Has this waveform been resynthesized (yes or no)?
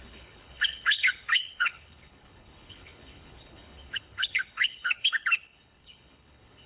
yes